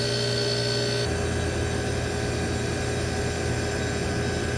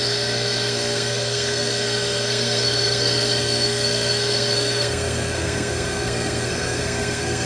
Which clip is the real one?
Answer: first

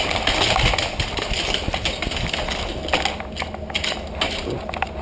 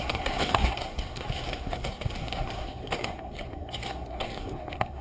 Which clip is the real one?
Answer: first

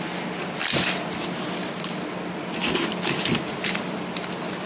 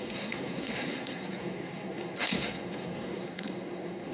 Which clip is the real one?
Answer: first